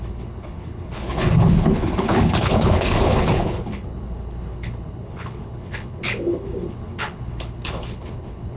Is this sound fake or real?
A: fake